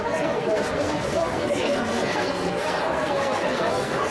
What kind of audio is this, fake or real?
fake